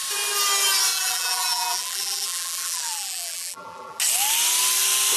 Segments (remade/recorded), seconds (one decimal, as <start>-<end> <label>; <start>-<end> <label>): 0.0-0.9 recorded; 0.9-4.0 remade; 4.0-5.2 recorded